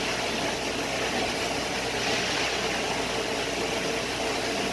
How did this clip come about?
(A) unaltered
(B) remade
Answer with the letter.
A